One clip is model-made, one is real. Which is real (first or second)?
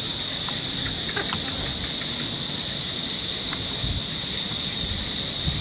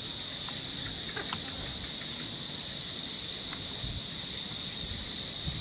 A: first